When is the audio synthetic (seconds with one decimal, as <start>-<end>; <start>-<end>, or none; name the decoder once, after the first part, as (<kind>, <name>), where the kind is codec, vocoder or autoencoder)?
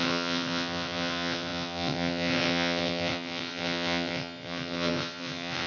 0.0-5.7 (vocoder, WaveNeXt)